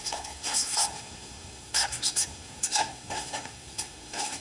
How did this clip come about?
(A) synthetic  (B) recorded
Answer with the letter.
A